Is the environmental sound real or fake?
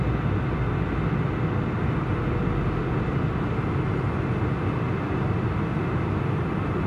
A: real